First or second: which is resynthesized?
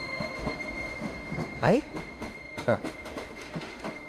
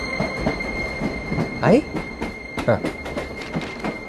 first